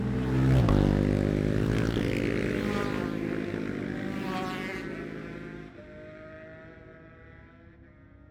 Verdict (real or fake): real